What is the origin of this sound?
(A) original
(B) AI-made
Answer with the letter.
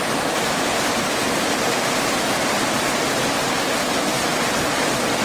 B